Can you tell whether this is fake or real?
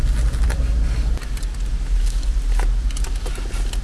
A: real